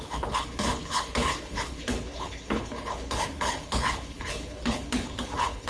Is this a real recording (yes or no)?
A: no